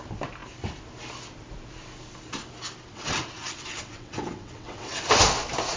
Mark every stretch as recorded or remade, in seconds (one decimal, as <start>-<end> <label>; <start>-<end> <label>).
0.0-2.9 recorded; 2.9-5.2 remade; 5.2-5.8 recorded